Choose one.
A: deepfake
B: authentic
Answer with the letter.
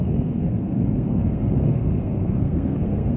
A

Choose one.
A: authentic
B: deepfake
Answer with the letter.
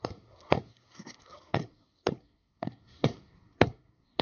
B